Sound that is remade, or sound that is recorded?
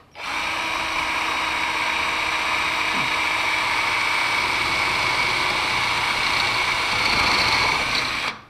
recorded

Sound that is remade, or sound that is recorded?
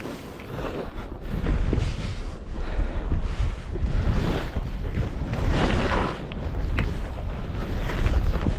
recorded